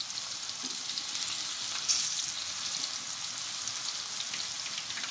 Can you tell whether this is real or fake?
real